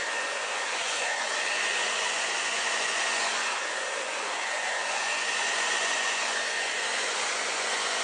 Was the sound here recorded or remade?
remade